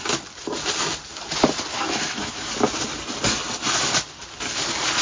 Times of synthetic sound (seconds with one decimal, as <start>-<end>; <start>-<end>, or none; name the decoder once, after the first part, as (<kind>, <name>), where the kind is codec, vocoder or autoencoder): 1.7-2.5 (autoencoder, DAC-VAE)